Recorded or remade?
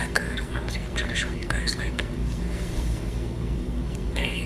remade